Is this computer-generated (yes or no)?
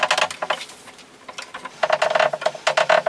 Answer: no